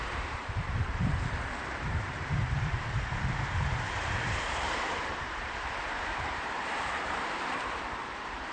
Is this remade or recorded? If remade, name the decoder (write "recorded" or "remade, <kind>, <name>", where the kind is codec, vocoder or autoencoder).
remade, vocoder, BigVGAN v2